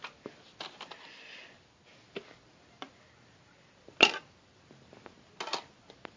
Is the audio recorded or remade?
recorded